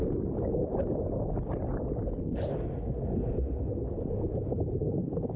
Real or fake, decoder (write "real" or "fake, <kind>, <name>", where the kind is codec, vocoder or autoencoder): real